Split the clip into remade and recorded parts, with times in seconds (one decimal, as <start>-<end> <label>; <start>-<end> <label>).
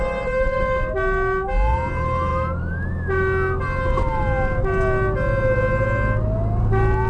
0.0-7.1 recorded